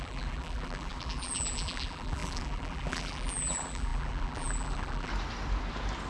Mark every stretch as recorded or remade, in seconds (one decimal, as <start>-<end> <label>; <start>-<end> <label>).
0.0-5.1 remade; 5.1-6.1 recorded